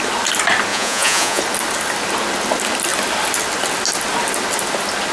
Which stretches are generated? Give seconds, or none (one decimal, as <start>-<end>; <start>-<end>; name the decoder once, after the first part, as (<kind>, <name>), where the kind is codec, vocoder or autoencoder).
0.7-1.4 (vocoder, Vocos)

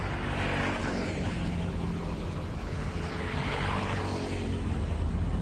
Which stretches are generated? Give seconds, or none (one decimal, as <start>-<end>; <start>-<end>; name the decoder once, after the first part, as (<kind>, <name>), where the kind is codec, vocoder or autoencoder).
0.8-4.0 (codec, HILCodec)

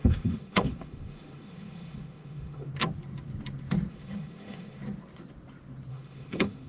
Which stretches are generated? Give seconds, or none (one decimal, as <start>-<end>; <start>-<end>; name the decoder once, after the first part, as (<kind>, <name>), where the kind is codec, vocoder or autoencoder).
0.0-2.7 (autoencoder, DAC-VAE); 3.9-4.8; 5.9-6.7

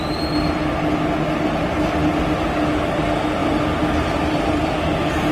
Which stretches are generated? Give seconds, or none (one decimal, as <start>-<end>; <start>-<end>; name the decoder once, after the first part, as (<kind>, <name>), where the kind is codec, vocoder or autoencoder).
none

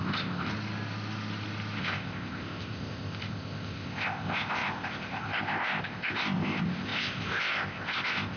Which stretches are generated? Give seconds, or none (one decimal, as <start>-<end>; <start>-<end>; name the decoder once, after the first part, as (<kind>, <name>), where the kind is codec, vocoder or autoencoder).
0.0-0.5 (codec, ZipCodec); 1.8-8.4

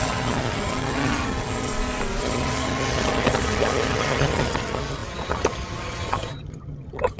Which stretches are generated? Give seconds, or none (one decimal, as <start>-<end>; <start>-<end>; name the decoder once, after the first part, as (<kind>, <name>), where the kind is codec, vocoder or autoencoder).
0.0-1.7 (vocoder, HiFi-GAN); 2.2-7.2

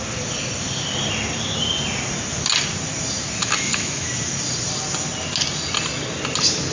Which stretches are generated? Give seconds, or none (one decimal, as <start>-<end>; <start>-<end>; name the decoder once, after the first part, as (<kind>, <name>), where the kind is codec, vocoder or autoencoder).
3.4-4.1 (autoencoder, DAC-VAE)

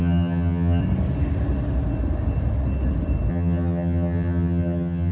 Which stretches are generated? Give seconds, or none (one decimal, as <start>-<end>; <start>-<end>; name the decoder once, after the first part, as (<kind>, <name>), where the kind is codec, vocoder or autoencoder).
0.0-0.8 (vocoder, HiFi-GAN); 3.3-5.1